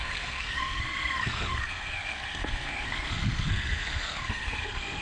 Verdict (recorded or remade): remade